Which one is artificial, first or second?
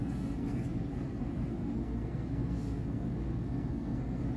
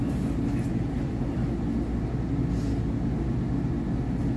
first